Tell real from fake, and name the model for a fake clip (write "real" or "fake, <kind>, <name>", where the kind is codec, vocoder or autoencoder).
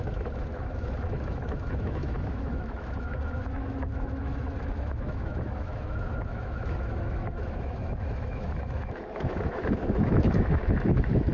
fake, autoencoder, DAC-VAE